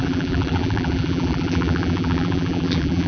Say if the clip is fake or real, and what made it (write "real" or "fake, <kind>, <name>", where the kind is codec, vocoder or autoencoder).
fake, vocoder, BigVGAN v2